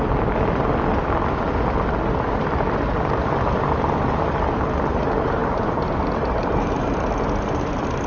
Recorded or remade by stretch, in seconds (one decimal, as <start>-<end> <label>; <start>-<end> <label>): 0.0-5.4 recorded; 5.4-8.1 remade